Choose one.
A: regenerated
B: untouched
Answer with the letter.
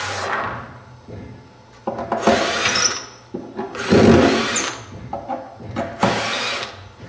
B